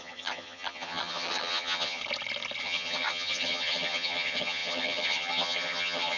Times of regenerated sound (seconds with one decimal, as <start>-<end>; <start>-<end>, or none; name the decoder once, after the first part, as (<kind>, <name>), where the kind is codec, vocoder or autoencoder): 0.0-2.0 (vocoder, HiFi-GAN); 2.6-6.2